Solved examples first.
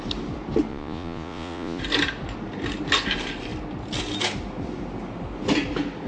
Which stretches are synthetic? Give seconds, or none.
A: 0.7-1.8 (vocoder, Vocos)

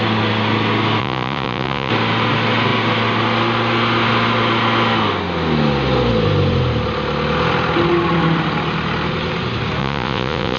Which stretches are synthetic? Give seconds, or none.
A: 1.0-1.9 (vocoder, Vocos); 9.8-10.6

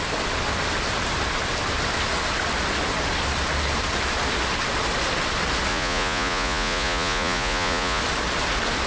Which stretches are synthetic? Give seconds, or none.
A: 5.7-8.0 (vocoder, Vocos)

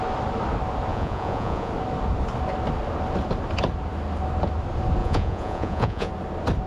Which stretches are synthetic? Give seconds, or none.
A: 0.9-1.7 (vocoder, Vocos); 5.0-6.1

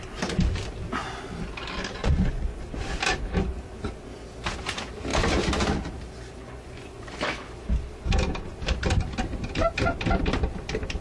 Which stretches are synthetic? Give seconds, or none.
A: 2.0-2.6 (vocoder, Vocos); 6.4-7.1

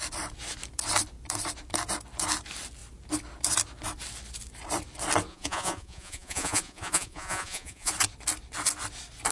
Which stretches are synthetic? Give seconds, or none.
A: 5.3-7.9 (vocoder, Vocos)

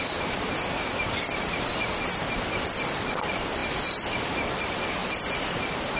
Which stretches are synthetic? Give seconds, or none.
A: none